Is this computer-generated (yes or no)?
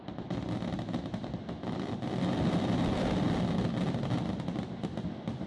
no